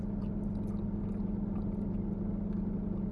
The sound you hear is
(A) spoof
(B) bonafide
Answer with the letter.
B